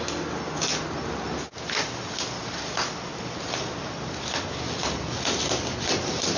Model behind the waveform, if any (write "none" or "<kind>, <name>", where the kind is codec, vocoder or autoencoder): none